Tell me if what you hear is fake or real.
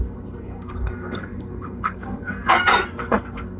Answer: fake